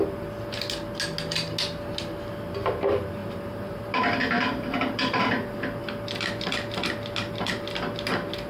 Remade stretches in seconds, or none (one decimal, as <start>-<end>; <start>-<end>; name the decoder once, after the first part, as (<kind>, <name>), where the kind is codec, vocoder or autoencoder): 3.2-3.8 (vocoder, BigVGAN v2); 4.2-5.3